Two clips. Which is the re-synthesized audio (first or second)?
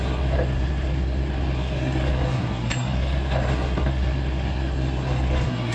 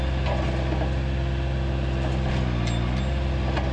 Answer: first